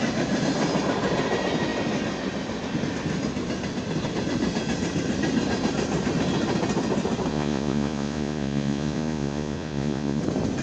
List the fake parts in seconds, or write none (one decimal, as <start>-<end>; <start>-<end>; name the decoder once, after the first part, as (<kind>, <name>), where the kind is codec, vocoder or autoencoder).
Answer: 7.3-10.2 (vocoder, Vocos)